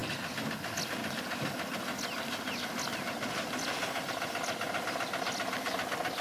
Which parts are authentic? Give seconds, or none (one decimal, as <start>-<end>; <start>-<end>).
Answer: 0.0-6.2